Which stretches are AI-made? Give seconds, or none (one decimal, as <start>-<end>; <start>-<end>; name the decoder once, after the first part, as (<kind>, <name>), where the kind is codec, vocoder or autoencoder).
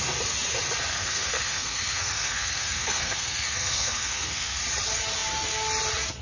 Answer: 0.9-4.6 (codec, SNAC)